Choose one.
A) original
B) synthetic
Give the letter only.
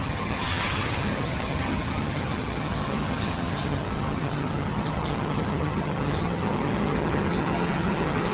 B